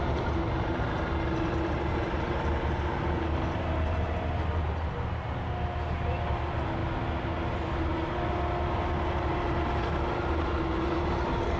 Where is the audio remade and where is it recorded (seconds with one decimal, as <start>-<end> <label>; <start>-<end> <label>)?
0.0-11.6 recorded